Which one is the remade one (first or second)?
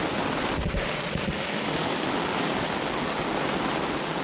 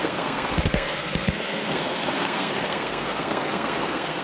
second